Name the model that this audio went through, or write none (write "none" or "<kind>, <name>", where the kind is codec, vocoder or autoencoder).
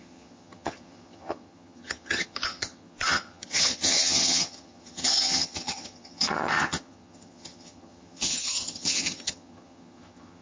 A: vocoder, HiFi-GAN